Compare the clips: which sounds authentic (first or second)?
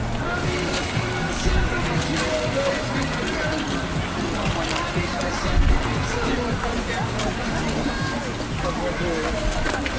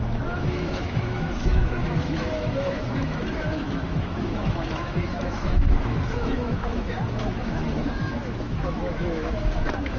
first